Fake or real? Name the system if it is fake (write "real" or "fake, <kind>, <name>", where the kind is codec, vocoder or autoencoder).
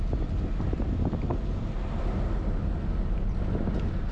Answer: real